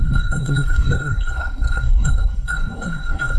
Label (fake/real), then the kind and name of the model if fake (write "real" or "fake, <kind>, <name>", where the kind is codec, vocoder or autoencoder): fake, codec, SNAC